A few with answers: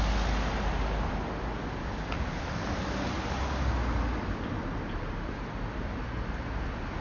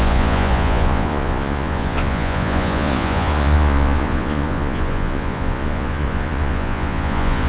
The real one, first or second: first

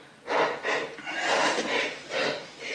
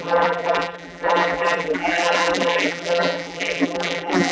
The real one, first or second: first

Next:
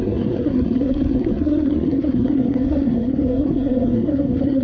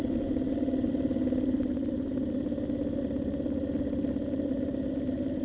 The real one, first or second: second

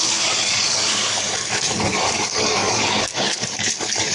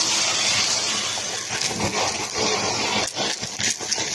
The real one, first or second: second